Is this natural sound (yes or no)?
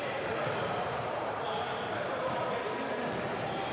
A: yes